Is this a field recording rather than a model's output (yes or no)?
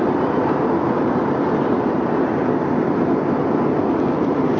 yes